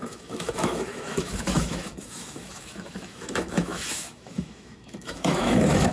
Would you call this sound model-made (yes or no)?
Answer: yes